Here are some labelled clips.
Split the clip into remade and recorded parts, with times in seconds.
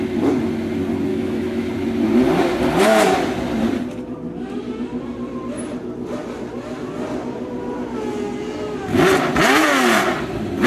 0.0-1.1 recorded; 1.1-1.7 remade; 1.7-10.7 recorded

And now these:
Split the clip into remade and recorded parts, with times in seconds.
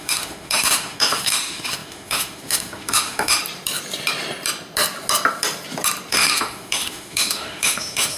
0.0-3.4 remade; 3.4-6.1 recorded; 6.1-8.2 remade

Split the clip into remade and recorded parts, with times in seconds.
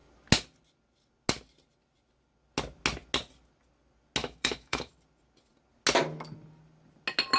0.0-4.2 recorded; 4.2-4.9 remade; 4.9-7.4 recorded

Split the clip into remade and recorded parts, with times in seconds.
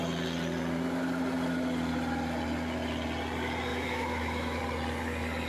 0.0-3.7 recorded; 3.7-4.6 remade; 4.6-5.5 recorded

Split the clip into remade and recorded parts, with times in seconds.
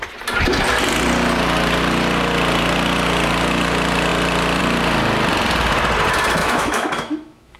0.0-6.4 recorded; 6.4-7.6 remade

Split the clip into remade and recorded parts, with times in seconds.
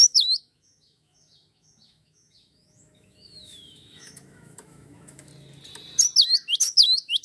0.0-5.3 remade; 5.3-6.6 recorded; 6.6-7.2 remade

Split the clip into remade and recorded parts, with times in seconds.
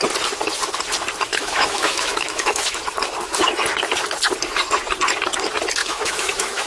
0.0-1.3 recorded; 1.3-2.8 remade; 2.8-5.8 recorded; 5.8-6.7 remade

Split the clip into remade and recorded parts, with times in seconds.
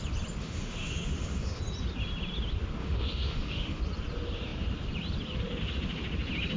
0.0-0.4 recorded; 0.4-1.6 remade; 1.6-2.8 recorded; 2.8-3.8 remade; 3.8-6.6 recorded